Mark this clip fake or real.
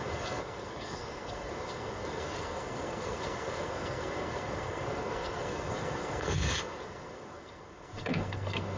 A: fake